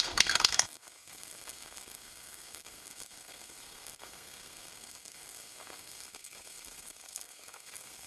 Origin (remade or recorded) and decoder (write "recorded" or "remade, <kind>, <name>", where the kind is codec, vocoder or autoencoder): remade, codec, SNAC